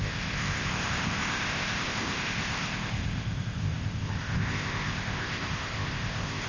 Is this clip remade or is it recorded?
remade